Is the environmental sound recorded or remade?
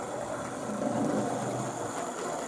recorded